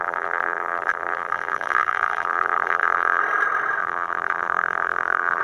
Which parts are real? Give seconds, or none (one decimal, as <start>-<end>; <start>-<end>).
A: 3.2-3.8